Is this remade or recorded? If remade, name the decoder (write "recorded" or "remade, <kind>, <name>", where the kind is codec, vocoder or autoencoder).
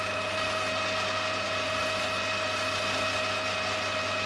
recorded